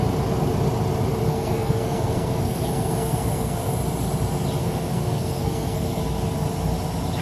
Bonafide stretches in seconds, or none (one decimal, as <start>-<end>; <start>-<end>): 0.0-1.3; 3.7-4.6; 6.0-7.2